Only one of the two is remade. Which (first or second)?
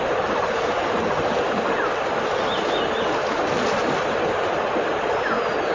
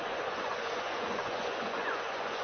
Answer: second